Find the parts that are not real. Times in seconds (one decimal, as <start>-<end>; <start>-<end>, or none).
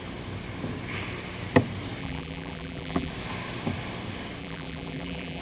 2.0-3.1; 4.4-5.4